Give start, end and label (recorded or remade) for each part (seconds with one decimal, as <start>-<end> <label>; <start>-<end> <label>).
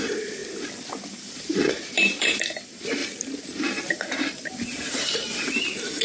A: 0.0-0.4 remade; 0.4-1.1 recorded; 1.1-3.0 remade; 3.0-3.9 recorded; 3.9-6.0 remade